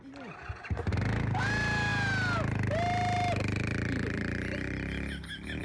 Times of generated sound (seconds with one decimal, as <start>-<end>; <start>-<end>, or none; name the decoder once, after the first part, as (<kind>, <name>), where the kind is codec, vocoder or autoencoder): none